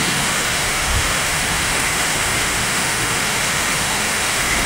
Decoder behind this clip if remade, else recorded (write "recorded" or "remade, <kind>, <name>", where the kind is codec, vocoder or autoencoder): remade, autoencoder, DAC-VAE